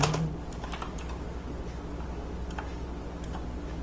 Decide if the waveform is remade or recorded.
recorded